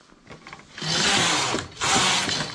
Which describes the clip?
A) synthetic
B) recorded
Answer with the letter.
B